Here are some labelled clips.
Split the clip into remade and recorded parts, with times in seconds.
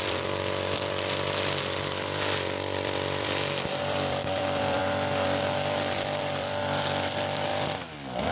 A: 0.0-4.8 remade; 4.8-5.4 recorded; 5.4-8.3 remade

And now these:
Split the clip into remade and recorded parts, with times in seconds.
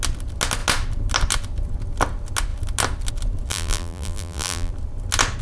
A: 0.0-3.5 recorded; 3.5-4.7 remade; 4.7-5.4 recorded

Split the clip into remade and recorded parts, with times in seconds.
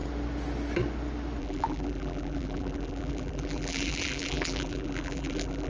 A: 0.0-1.4 recorded; 1.4-5.7 remade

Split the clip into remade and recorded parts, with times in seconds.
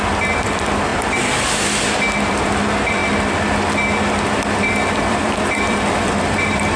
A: 0.0-0.9 remade; 0.9-2.3 recorded; 2.3-3.0 remade; 3.0-4.4 recorded; 4.4-6.8 remade